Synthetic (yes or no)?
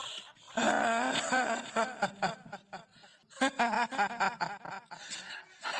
no